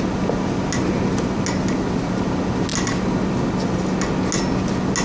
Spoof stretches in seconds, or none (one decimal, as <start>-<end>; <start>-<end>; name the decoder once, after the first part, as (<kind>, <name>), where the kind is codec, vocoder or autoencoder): none